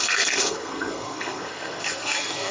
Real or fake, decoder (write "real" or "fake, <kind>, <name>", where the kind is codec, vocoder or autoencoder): fake, codec, SNAC